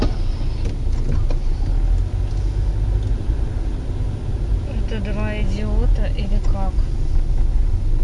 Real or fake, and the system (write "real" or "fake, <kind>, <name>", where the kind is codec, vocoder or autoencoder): real